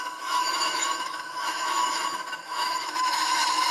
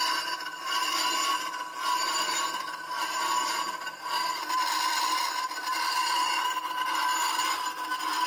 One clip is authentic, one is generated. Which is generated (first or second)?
first